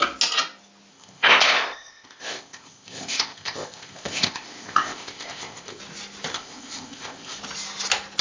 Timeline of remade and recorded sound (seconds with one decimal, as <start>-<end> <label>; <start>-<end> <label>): 0.0-0.9 recorded; 0.9-5.8 remade; 5.8-6.3 recorded; 6.3-7.4 remade; 7.4-8.2 recorded